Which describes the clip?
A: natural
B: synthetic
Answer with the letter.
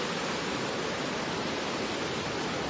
A